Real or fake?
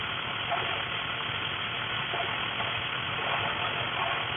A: real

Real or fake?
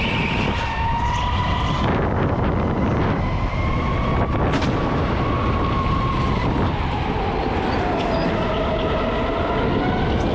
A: real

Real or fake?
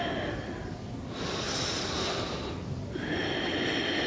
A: real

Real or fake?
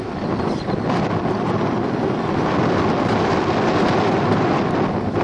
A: real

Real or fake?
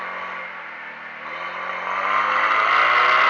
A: real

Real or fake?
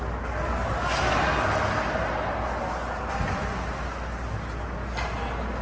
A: real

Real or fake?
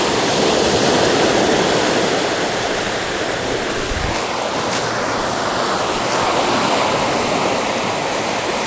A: real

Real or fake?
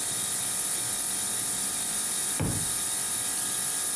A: real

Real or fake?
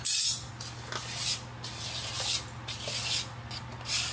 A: real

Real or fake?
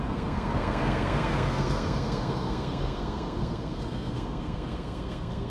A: fake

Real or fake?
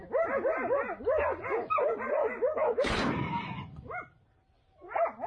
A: real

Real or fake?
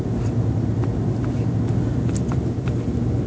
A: real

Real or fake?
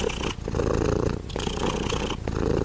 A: real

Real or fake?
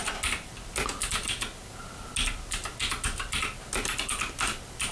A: real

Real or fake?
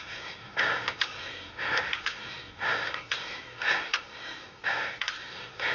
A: fake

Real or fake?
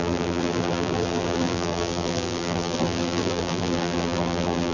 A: fake